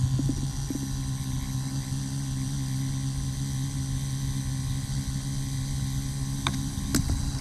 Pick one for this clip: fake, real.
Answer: real